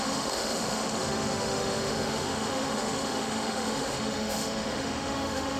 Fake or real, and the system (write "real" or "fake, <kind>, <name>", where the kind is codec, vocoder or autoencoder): fake, autoencoder, DAC-VAE